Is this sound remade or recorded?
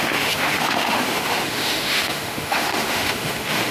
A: remade